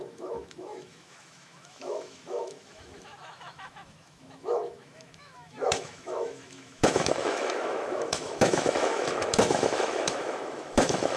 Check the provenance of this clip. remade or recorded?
remade